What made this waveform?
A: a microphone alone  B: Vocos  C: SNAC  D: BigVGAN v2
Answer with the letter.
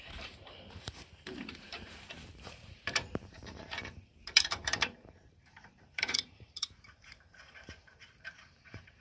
D